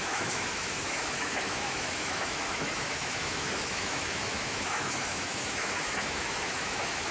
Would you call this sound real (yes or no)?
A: no